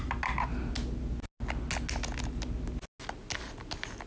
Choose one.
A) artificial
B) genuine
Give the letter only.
B